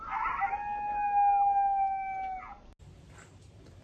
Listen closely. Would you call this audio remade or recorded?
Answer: recorded